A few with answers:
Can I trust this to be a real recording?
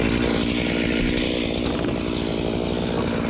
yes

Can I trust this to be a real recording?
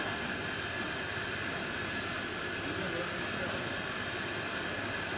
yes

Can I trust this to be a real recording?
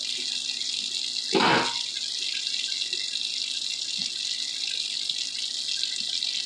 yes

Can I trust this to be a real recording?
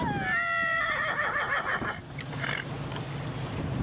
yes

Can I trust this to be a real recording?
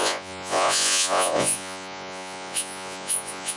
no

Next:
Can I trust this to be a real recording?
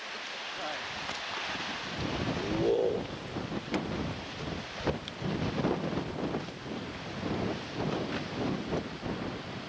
yes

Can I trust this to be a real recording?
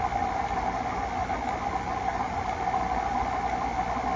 yes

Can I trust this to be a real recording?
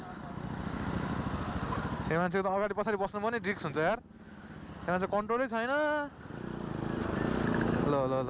yes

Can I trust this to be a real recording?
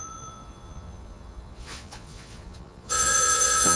no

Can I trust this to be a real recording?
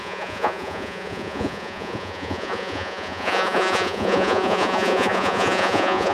no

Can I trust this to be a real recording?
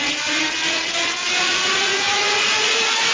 no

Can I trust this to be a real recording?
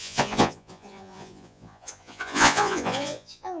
no